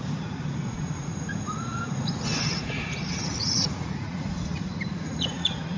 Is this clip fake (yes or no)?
yes